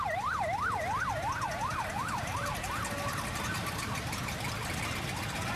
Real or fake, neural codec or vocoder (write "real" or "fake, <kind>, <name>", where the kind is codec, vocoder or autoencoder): real